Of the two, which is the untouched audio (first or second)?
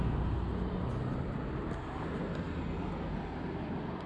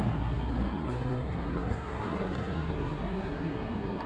first